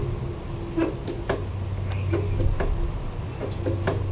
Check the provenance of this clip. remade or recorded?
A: recorded